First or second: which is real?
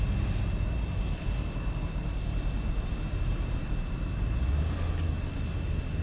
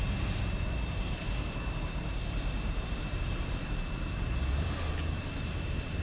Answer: first